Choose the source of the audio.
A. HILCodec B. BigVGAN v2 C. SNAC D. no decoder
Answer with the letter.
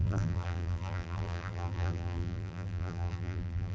B